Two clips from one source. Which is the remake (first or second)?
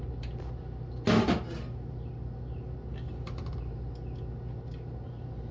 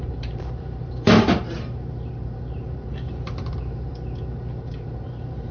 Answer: second